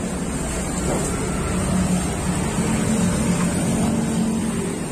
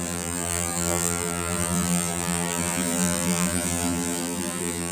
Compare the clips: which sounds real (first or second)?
first